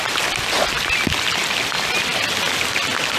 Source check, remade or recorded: recorded